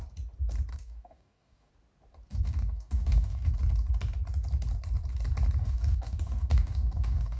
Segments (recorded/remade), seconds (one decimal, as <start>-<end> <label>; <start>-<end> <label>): 0.0-0.7 recorded; 0.7-1.7 remade; 1.7-2.3 recorded; 2.3-3.5 remade; 3.5-5.6 recorded; 5.6-7.4 remade